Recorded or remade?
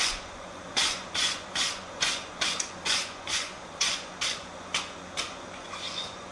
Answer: remade